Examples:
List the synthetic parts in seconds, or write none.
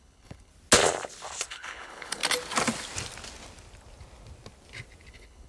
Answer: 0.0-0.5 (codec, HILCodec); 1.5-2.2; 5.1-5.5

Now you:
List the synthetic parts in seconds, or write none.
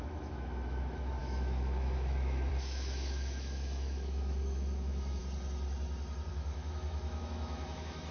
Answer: 0.0-5.2 (autoencoder, DAC-VAE); 6.3-8.1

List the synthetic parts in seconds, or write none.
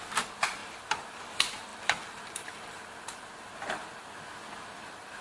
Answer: 0.6-1.2 (vocoder, BigVGAN v2); 1.7-3.5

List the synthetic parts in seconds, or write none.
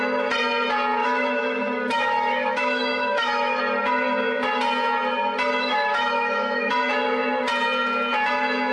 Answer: 1.0-3.6 (autoencoder, DAC-VAE); 5.6-6.7